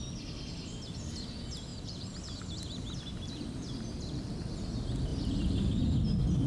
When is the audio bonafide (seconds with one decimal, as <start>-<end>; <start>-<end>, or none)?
0.0-1.7; 4.3-5.1; 5.8-6.5